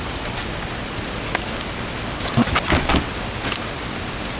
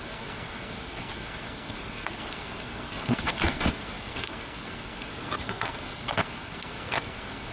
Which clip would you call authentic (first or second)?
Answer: first